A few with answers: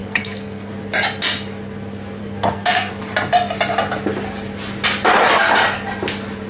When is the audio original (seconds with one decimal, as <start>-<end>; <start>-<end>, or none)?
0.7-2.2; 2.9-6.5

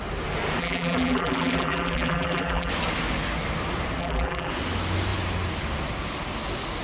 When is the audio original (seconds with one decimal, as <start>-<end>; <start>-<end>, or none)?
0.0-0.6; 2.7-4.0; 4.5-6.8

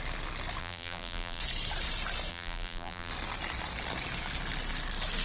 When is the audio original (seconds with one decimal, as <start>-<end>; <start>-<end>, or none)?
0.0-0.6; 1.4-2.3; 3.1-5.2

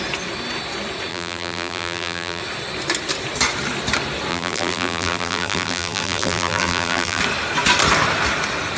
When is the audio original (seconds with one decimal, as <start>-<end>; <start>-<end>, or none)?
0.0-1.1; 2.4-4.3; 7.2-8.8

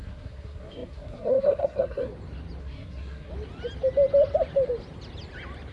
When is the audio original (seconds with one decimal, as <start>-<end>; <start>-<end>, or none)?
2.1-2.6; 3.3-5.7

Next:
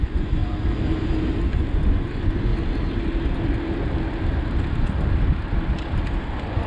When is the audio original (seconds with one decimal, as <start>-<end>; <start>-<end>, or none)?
0.4-1.5; 2.5-6.3

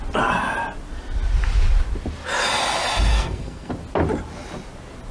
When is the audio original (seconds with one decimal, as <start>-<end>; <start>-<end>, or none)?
0.0-3.1; 3.7-5.1